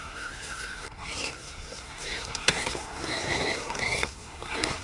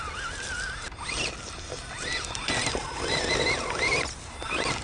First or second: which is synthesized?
first